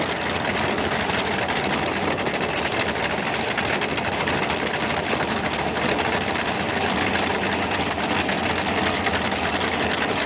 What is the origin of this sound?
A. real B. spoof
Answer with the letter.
A